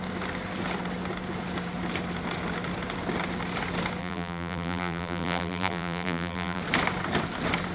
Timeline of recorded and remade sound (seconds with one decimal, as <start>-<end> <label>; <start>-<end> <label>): 0.0-4.0 recorded; 4.0-6.6 remade; 6.6-7.7 recorded